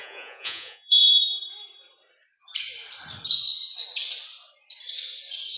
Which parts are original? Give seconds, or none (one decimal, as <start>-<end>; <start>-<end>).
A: 1.0-5.6

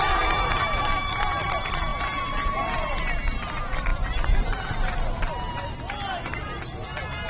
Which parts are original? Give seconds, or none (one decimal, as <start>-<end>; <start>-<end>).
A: 0.0-7.3

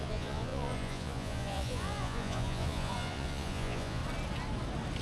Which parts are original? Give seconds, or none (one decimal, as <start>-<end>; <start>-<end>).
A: 4.0-5.0

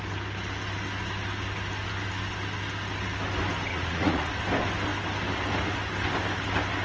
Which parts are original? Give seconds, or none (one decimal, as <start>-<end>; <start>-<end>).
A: 0.0-3.7; 4.3-6.8

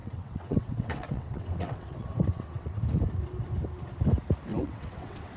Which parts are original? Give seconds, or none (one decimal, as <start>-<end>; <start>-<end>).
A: 2.8-4.5